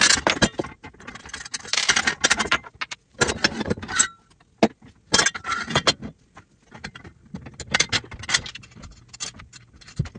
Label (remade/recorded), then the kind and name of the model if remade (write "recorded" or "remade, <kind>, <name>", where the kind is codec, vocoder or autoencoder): recorded